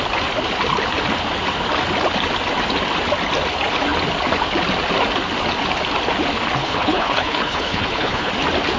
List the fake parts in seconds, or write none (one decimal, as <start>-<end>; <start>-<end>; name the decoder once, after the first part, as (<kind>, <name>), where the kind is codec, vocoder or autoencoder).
6.6-8.3 (codec, HILCodec)